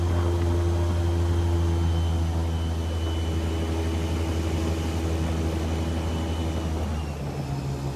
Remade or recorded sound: recorded